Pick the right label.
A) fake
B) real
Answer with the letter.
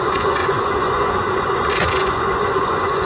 A